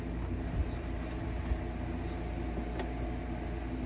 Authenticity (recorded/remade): recorded